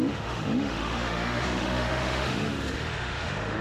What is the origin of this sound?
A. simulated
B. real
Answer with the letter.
A